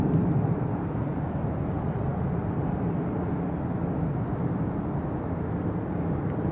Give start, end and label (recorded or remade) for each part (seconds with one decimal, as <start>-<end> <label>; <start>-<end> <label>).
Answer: 0.0-1.1 remade; 1.1-6.5 recorded